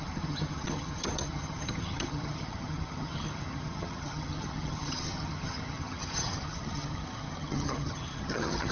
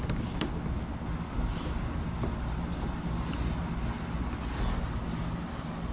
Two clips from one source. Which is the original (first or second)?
second